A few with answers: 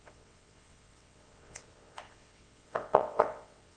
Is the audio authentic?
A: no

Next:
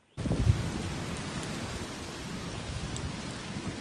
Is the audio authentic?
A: yes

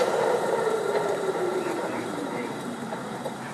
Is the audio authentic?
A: no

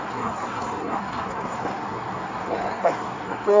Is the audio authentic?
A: no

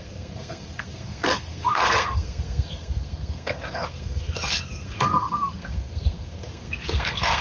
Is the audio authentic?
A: no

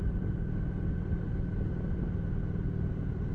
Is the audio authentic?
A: yes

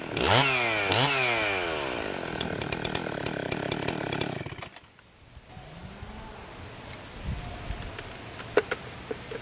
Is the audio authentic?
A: yes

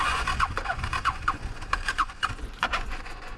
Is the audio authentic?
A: no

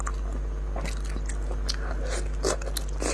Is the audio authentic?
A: yes